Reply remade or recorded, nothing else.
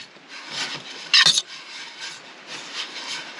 recorded